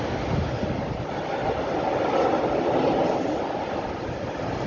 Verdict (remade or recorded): recorded